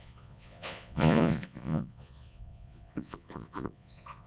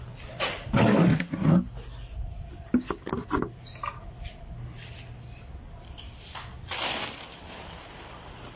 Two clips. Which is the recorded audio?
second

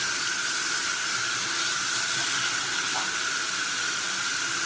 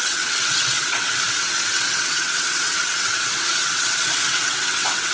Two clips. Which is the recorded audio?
first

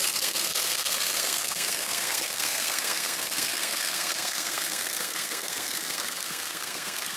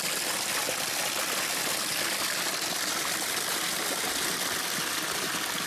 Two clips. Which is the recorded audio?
second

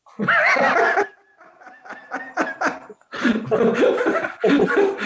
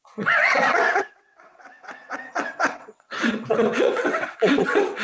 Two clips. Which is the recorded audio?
first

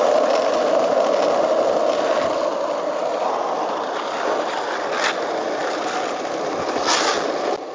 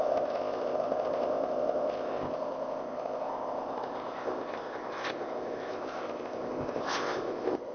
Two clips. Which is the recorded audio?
first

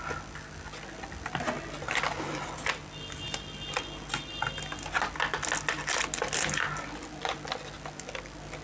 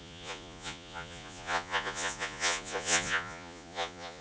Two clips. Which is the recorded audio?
first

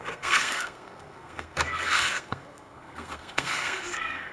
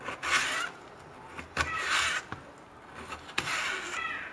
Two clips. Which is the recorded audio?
second